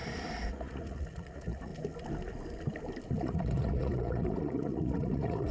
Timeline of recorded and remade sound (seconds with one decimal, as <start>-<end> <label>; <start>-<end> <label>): 0.0-0.5 recorded; 0.5-1.7 remade; 1.7-3.2 recorded; 3.2-5.5 remade